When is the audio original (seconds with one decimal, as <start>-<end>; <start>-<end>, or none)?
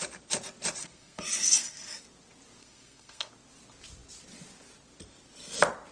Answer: 0.0-0.8; 2.0-2.6; 3.3-5.9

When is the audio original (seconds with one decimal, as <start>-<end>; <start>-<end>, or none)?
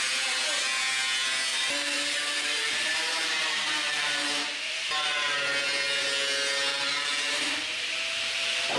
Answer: 0.0-1.5; 4.9-6.7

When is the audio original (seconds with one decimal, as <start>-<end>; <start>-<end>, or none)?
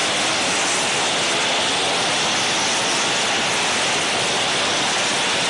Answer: 0.0-5.5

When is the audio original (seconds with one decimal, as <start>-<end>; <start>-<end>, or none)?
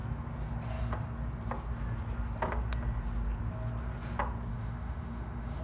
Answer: 0.0-4.5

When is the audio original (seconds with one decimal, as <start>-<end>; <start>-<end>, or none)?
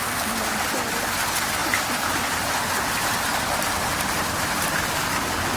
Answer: 0.0-1.6; 5.0-5.6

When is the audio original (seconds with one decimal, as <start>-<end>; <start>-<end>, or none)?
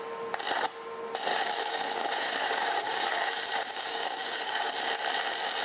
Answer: 0.0-1.3; 4.7-5.6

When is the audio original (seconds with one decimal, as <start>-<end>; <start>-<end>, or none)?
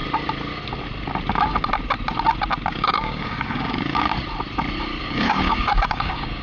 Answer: 0.0-2.7; 4.1-5.0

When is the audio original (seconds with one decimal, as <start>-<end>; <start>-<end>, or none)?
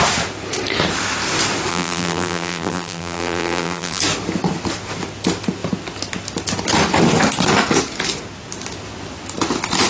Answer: 0.0-1.7; 4.0-9.9